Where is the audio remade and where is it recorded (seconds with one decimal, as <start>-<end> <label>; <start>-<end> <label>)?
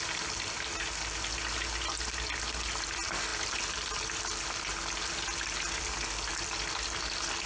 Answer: 0.0-7.5 recorded